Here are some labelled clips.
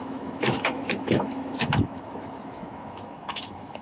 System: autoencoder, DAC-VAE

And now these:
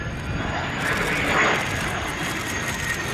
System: none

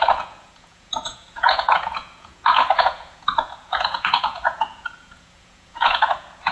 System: vocoder, Vocos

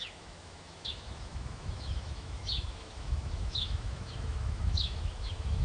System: autoencoder, DAC-VAE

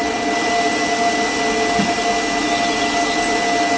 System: none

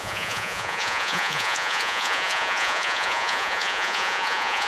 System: vocoder, Vocos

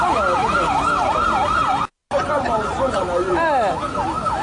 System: none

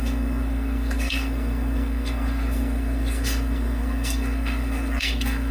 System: codec, SNAC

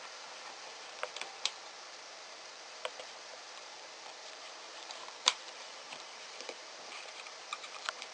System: vocoder, BigVGAN v2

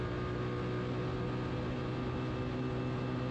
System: none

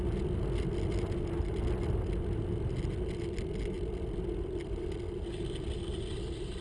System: none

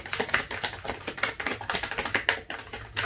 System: none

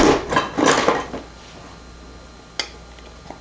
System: none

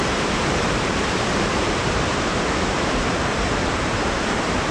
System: vocoder, BigVGAN v2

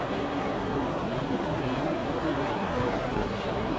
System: codec, SNAC